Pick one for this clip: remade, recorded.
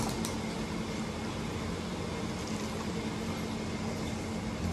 recorded